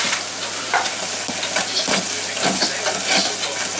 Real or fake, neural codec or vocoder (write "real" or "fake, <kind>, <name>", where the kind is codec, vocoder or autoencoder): real